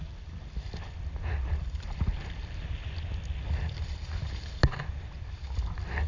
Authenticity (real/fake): real